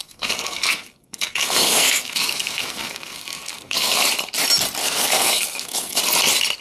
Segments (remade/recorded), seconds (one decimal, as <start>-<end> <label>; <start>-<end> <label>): 0.0-4.0 remade; 4.0-4.8 recorded; 4.8-6.0 remade; 6.0-6.6 recorded